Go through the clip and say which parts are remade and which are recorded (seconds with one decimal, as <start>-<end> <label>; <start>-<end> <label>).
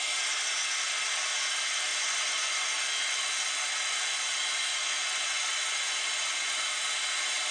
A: 0.0-1.9 recorded; 1.9-2.8 remade; 2.8-4.7 recorded; 4.7-6.6 remade; 6.6-7.5 recorded